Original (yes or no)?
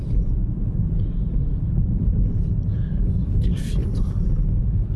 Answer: no